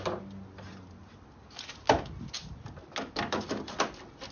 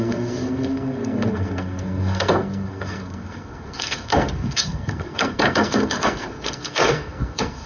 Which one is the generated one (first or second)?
second